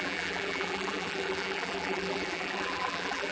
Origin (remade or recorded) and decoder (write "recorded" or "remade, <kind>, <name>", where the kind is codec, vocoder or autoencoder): remade, vocoder, BigVGAN v2